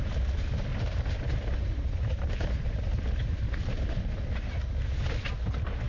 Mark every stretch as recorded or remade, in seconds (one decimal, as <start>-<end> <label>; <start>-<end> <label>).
0.0-0.7 recorded; 0.7-4.2 remade; 4.2-5.9 recorded